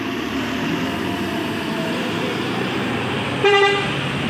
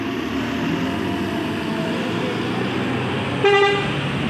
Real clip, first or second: second